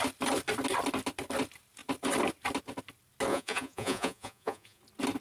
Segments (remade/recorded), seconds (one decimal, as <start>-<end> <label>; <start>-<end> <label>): 0.0-3.3 recorded; 3.3-4.8 remade; 4.8-5.2 recorded